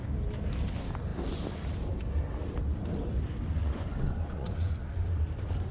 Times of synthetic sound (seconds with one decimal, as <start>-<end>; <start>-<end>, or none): 3.6-4.7